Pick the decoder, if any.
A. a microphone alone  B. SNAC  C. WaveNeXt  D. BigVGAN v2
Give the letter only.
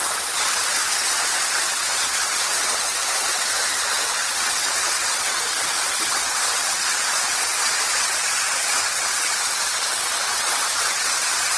C